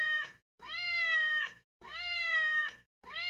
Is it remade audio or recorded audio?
remade